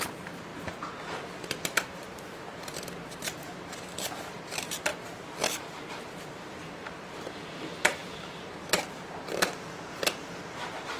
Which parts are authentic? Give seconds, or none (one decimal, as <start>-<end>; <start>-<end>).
4.9-5.9